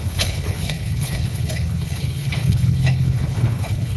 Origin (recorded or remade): remade